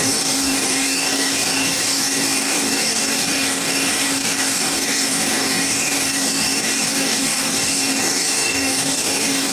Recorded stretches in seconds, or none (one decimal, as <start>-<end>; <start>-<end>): none